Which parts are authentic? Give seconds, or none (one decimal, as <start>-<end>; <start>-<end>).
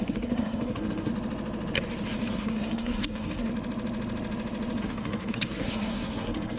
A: 1.1-2.3; 3.5-4.8